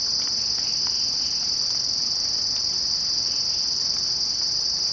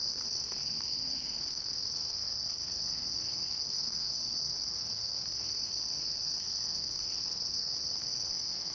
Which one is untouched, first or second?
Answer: first